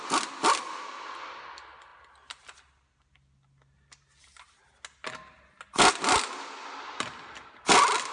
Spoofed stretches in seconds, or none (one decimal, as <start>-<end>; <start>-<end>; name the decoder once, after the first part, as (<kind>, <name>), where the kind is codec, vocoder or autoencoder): none